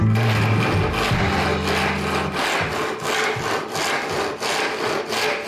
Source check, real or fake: real